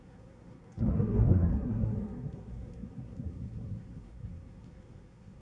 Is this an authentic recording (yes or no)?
no